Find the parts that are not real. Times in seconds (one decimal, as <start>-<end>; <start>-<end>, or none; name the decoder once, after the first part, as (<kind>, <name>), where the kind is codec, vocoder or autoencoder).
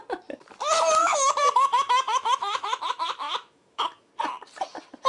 1.0-4.1 (autoencoder, DAC-VAE)